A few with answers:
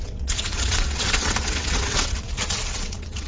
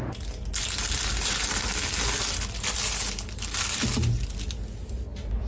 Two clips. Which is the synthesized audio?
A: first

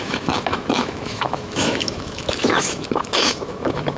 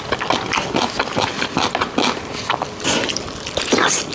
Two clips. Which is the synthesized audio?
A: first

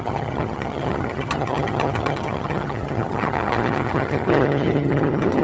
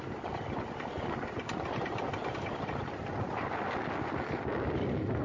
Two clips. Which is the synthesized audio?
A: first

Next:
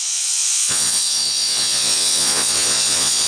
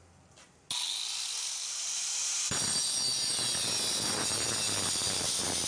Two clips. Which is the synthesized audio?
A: first